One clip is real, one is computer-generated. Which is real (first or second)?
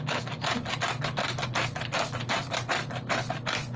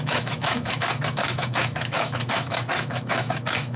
first